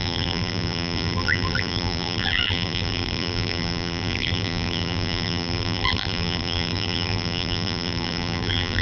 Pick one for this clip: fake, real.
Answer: fake